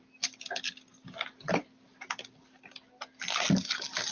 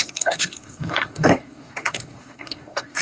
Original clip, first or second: first